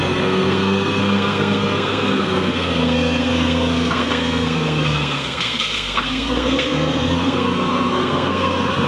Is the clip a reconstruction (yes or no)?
yes